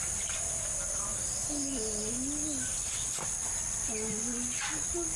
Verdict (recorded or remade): recorded